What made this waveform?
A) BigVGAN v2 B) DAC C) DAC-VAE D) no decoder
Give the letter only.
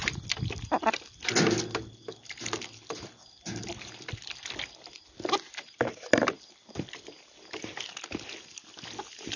D